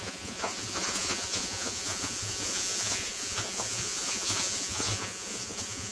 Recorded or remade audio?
remade